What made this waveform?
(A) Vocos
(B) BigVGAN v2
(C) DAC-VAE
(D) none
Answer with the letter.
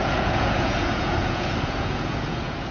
A